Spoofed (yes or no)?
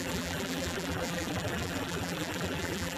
yes